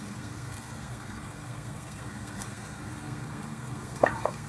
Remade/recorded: remade